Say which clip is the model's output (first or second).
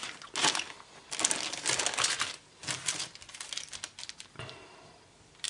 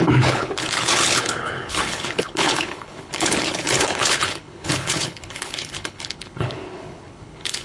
second